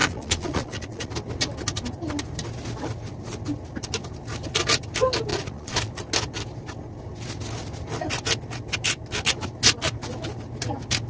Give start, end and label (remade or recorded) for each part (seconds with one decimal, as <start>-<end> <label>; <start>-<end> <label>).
0.0-1.1 remade; 1.1-5.3 recorded; 5.3-5.9 remade; 5.9-11.1 recorded